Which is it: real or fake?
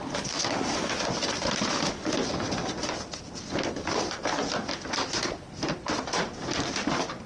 real